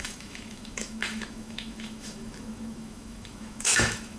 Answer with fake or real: fake